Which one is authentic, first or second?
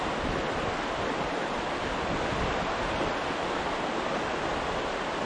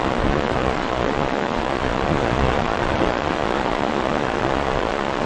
first